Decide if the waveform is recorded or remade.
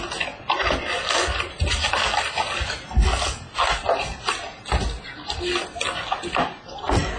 recorded